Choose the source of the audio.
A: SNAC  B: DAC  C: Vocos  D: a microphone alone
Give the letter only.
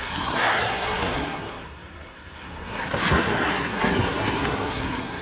A